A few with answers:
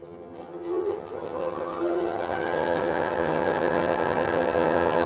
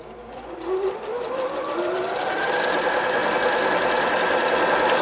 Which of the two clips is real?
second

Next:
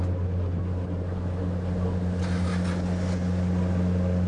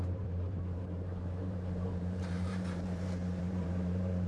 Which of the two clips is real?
first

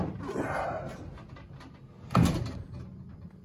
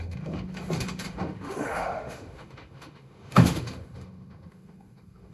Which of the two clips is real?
first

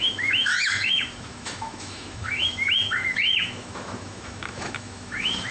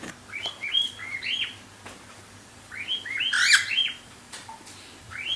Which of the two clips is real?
second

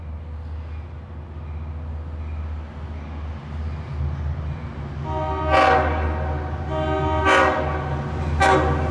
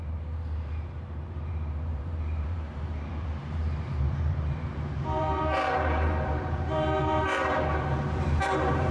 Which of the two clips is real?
first